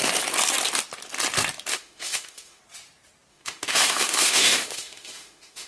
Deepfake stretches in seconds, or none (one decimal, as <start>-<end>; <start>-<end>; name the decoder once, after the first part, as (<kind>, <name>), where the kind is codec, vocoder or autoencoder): 1.7-2.6 (autoencoder, DAC-VAE); 3.3-5.7